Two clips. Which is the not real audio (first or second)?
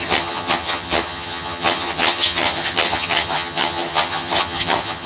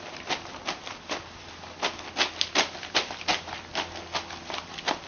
first